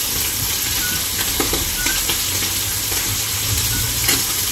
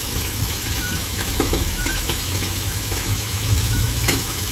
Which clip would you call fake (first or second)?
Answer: second